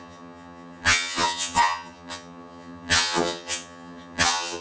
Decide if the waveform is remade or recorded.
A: remade